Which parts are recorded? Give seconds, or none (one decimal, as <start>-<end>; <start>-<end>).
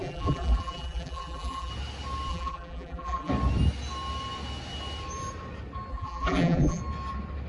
1.7-2.3; 3.3-5.9; 6.8-7.5